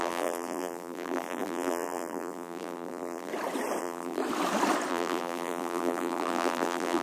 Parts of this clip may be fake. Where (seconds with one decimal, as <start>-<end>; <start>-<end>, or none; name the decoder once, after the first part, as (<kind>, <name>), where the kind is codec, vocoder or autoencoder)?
0.0-3.3 (vocoder, BigVGAN v2); 3.8-4.2; 4.9-7.0